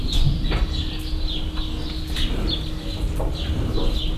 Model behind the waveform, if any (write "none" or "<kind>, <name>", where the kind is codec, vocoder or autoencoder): none